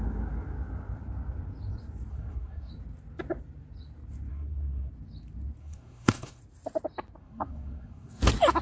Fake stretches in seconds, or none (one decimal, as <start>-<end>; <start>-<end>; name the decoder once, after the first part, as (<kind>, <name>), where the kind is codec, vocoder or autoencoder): 2.1-2.7 (codec, SNAC); 4.3-4.9; 5.6-6.4; 7.2-8.2